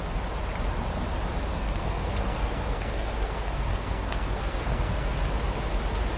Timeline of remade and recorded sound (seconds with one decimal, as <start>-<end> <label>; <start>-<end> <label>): 0.0-1.5 recorded; 1.5-5.2 remade; 5.2-6.2 recorded